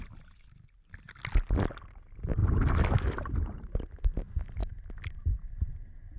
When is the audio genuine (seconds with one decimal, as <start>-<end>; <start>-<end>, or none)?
0.0-6.2